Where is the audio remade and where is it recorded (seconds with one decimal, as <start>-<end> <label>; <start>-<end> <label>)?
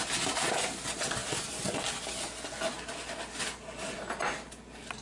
0.0-5.0 recorded